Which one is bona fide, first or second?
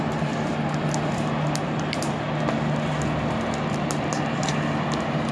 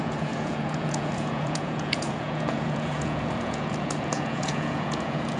first